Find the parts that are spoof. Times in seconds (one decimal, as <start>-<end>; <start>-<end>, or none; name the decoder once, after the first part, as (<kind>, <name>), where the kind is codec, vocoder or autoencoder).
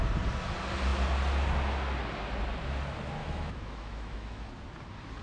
3.2-4.5 (autoencoder, DAC-VAE)